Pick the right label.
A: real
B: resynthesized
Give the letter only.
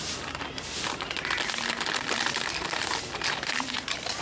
A